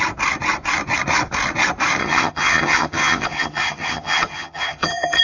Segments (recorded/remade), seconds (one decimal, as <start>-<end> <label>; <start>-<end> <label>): 0.0-2.0 recorded; 2.0-5.2 remade